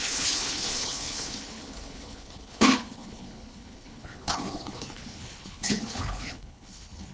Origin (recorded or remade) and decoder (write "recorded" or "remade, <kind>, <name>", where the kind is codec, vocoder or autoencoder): remade, codec, HILCodec